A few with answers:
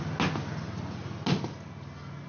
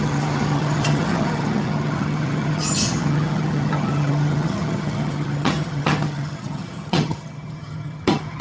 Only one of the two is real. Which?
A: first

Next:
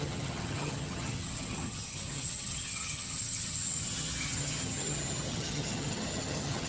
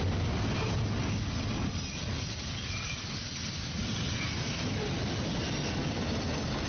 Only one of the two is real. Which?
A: second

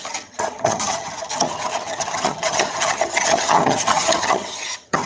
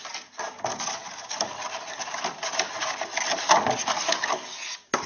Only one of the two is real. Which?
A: second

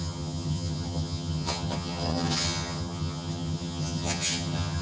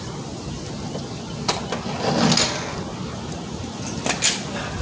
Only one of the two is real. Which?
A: second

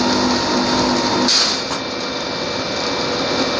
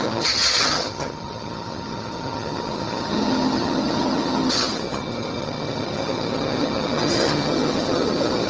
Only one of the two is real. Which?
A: first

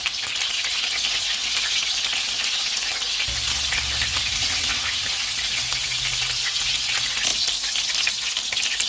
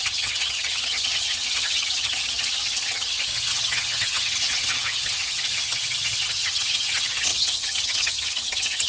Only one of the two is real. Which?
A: first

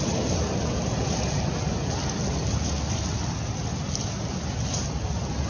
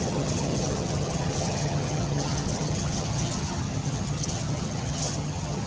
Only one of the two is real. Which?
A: first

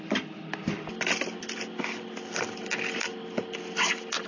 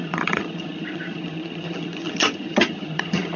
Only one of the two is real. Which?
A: first